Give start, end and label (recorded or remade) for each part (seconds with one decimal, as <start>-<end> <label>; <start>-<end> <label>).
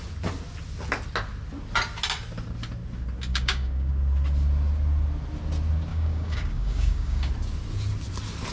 0.0-3.3 recorded; 3.3-3.9 remade; 3.9-5.9 recorded; 5.9-7.3 remade; 7.3-8.5 recorded